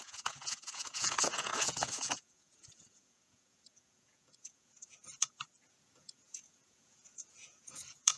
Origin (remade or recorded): remade